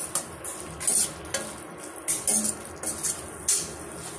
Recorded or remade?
recorded